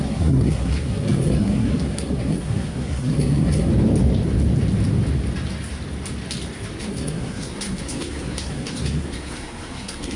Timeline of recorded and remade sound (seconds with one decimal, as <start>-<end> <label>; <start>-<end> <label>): 0.0-3.7 remade; 3.7-6.8 recorded; 6.8-10.2 remade